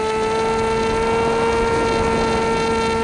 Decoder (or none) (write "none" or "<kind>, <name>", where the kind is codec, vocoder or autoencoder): none